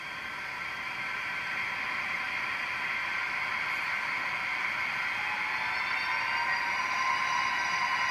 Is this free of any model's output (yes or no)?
no